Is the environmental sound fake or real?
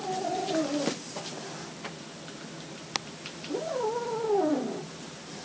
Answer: real